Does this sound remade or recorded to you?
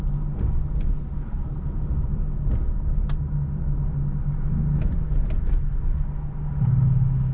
recorded